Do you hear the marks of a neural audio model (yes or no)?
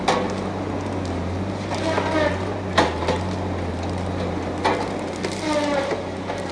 no